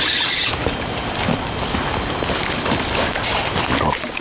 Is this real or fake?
real